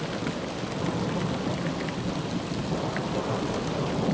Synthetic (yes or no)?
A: no